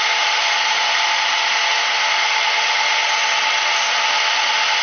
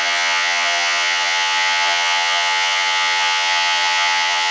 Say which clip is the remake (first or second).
second